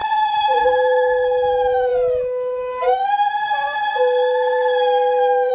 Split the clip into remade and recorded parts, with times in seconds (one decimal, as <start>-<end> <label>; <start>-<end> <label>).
0.0-0.6 recorded; 0.6-1.9 remade; 1.9-5.5 recorded